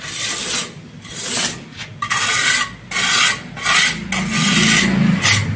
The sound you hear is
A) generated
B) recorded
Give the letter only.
B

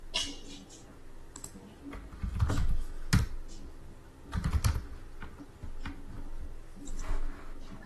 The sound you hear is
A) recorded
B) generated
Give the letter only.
A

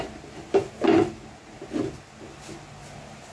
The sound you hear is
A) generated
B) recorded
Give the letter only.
B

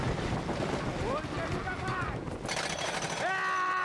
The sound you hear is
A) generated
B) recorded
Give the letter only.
B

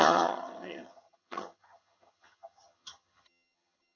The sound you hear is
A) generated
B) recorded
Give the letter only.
A